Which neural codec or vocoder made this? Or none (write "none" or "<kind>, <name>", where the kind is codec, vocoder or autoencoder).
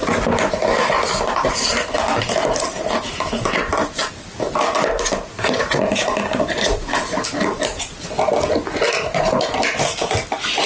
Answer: none